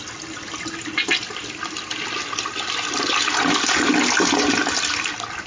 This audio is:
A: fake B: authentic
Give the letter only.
B